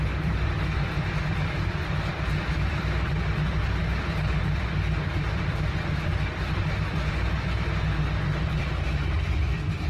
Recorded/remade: remade